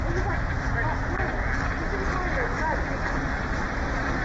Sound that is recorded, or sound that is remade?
recorded